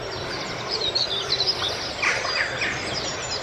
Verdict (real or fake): real